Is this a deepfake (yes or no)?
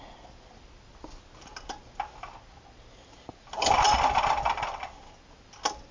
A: no